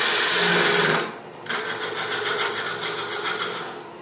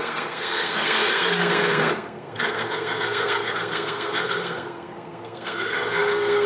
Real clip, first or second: first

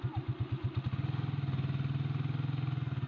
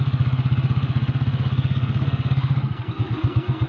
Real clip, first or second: first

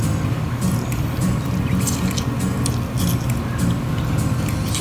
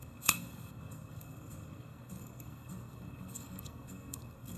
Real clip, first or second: first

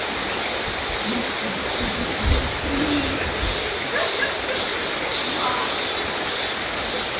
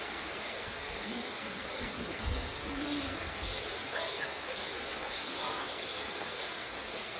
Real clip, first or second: first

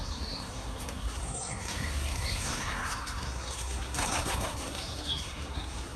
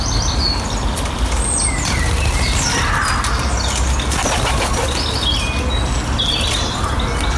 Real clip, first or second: second